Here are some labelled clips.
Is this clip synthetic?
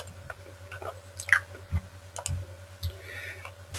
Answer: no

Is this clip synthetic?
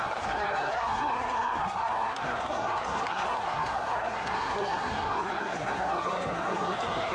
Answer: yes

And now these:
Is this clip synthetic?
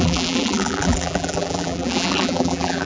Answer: yes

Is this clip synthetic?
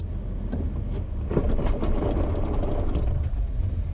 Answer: no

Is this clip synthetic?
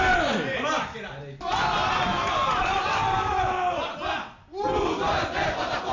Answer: no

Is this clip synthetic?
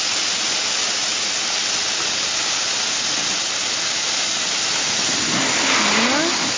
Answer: no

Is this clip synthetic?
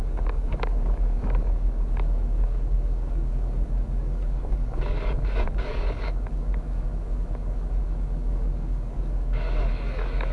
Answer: yes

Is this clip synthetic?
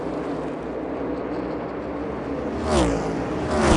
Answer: no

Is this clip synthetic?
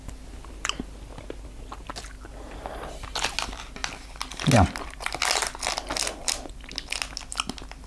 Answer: no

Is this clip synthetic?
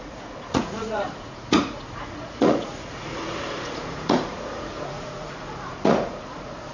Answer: yes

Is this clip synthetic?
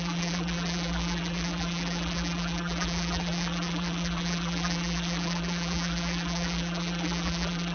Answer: yes